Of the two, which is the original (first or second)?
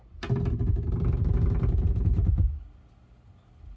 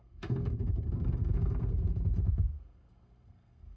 first